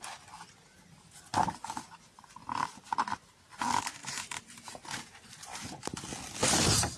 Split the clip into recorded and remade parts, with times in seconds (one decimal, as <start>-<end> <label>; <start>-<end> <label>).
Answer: 0.0-4.0 recorded; 4.0-5.7 remade; 5.7-7.0 recorded